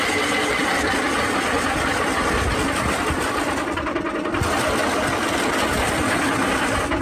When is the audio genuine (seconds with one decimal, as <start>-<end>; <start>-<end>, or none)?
0.0-7.0